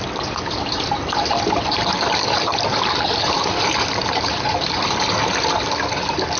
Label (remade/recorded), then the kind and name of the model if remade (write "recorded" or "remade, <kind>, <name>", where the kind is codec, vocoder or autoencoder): remade, vocoder, BigVGAN v2